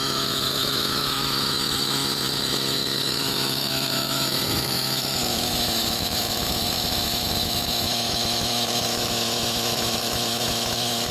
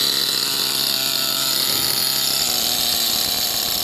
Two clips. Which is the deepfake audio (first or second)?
first